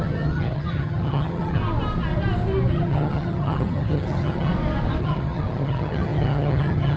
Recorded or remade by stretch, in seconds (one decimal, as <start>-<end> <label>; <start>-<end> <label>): 0.0-1.6 remade; 1.6-2.7 recorded; 2.7-4.5 remade; 4.5-5.0 recorded; 5.0-7.0 remade